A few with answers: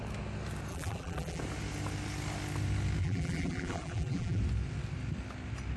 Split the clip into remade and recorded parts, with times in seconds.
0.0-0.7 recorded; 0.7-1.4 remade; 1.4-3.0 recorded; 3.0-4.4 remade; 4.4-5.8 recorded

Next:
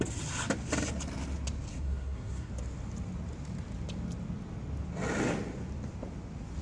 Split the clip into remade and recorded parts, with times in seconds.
0.0-1.7 recorded; 1.7-2.5 remade; 2.5-6.6 recorded

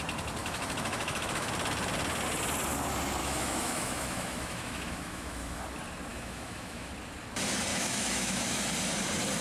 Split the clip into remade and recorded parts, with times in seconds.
0.0-0.4 recorded; 0.4-1.5 remade; 1.5-3.2 recorded; 3.2-5.6 remade; 5.6-6.1 recorded; 6.1-6.9 remade; 6.9-7.7 recorded; 7.7-8.6 remade; 8.6-9.4 recorded

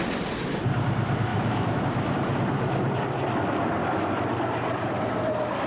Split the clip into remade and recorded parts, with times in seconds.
0.0-1.3 recorded; 1.3-1.8 remade; 1.8-5.7 recorded